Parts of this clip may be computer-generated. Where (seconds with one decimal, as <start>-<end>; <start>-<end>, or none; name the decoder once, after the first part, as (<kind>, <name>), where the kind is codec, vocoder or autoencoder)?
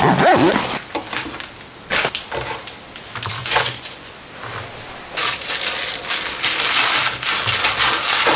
3.4-4.1 (vocoder, Vocos)